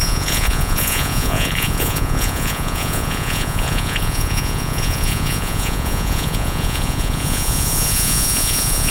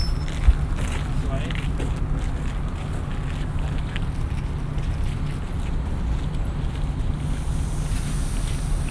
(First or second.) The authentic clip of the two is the second